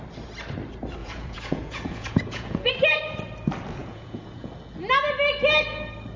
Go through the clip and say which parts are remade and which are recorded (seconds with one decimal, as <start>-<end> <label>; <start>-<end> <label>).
0.0-1.0 recorded; 1.0-2.7 remade; 2.7-3.8 recorded; 3.8-4.5 remade; 4.5-6.2 recorded